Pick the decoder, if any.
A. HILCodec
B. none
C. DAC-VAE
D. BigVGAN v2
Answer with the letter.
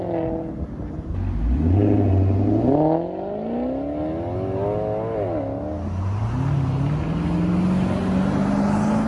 B